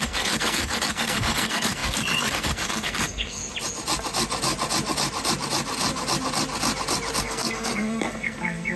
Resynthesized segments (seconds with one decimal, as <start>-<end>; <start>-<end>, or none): 0.0-3.4; 7.2-8.8